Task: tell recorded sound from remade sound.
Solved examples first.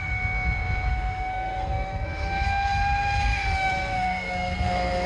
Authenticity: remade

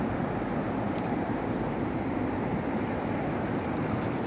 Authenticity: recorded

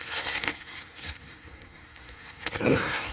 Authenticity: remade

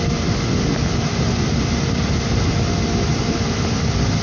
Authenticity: recorded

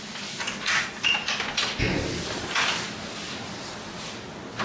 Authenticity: recorded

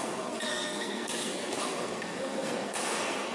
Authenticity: remade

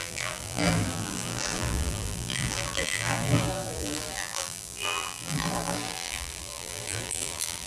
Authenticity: remade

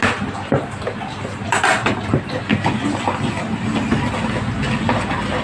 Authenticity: recorded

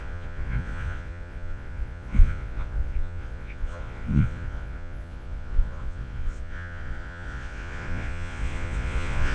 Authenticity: remade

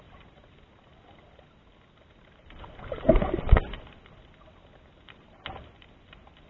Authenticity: recorded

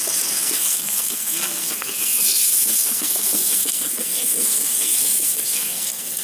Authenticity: remade